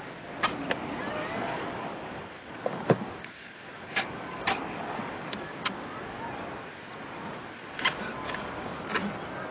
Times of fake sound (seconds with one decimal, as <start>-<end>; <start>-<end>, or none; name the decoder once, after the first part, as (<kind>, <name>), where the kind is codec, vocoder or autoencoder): 1.5-6.2 (codec, DAC); 8.1-8.8

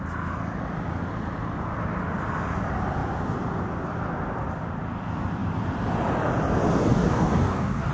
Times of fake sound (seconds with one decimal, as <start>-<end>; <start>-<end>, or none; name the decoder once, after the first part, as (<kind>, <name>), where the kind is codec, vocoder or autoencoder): 6.9-7.9 (codec, DAC)

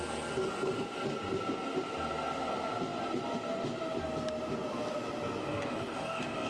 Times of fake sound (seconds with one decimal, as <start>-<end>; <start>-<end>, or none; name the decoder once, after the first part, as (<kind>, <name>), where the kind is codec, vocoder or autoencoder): 5.4-6.5 (codec, DAC)

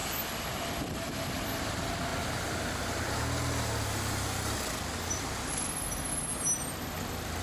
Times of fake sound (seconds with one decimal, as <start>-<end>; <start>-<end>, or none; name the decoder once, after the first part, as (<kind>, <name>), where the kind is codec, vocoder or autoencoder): none